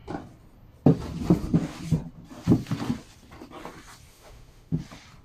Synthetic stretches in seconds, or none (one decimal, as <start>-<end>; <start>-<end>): 4.1-4.8